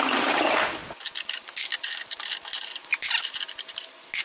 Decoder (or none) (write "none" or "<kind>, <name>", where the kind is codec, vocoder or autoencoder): none